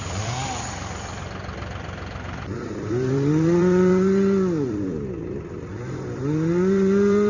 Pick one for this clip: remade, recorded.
remade